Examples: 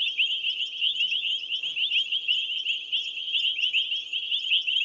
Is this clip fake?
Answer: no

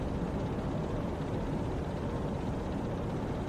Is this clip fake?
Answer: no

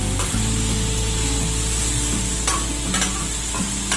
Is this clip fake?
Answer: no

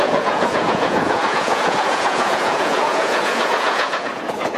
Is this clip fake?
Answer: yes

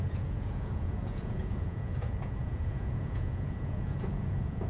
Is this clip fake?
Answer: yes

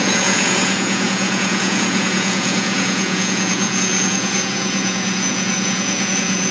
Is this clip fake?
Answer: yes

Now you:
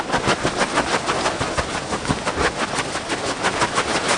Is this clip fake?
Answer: no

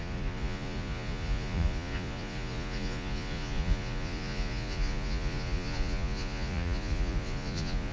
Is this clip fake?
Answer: yes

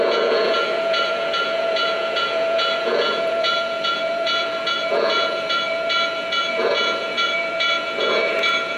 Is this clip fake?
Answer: yes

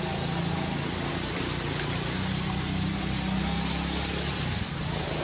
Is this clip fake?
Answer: no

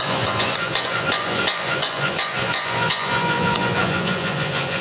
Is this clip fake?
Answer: yes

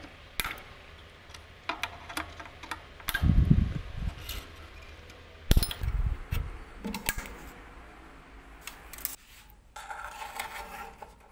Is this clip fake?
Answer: no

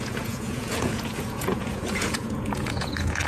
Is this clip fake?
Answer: yes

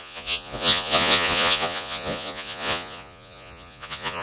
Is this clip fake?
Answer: yes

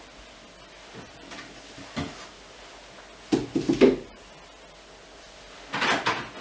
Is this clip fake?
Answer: no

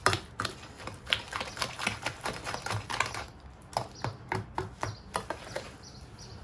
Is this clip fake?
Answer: no